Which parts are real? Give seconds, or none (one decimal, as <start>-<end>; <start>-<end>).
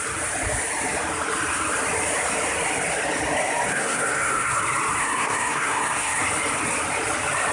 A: 0.0-3.7; 4.6-5.0; 6.2-7.5